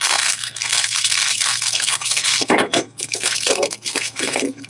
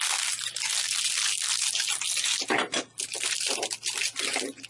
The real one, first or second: second